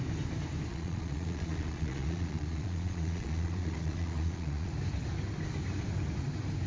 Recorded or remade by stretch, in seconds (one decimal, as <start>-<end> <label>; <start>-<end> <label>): 0.0-0.7 recorded; 0.7-4.7 remade; 4.7-6.7 recorded